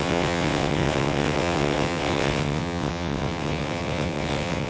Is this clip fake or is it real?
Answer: fake